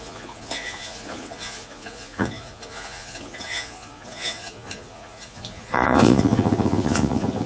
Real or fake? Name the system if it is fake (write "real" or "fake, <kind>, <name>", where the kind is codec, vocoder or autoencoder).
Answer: fake, vocoder, Vocos